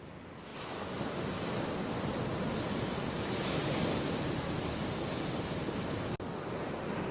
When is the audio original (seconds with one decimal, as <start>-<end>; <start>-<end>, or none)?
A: 0.0-7.1